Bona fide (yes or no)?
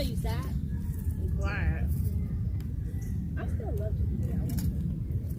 no